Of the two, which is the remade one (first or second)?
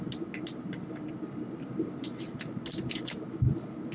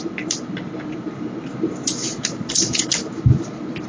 second